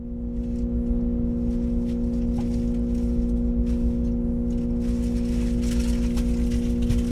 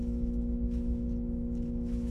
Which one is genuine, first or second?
first